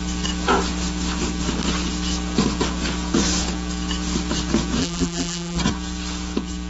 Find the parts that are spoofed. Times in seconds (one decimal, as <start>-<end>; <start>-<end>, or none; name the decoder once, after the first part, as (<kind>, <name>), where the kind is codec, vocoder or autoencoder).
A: 4.8-5.6 (vocoder, BigVGAN v2)